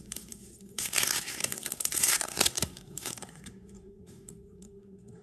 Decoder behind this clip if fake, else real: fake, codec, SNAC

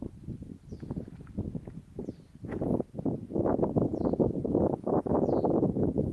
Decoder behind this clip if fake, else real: real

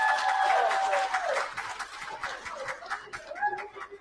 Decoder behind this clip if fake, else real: real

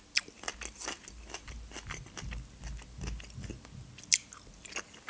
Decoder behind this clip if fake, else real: real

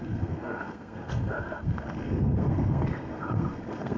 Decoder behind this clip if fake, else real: fake, codec, SNAC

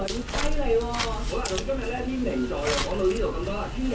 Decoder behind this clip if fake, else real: real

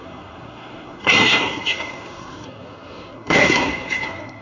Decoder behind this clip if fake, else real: fake, codec, SNAC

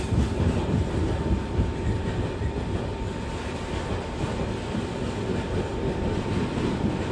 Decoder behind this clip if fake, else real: real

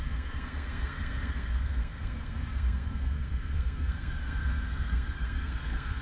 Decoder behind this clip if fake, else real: fake, codec, SNAC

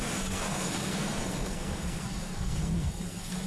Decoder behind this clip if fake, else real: fake, codec, SNAC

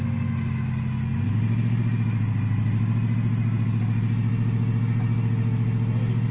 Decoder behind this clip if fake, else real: real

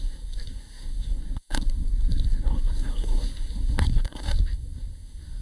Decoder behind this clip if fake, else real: fake, codec, SNAC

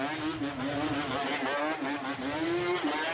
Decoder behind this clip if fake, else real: real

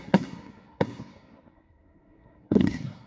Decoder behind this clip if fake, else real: fake, codec, SNAC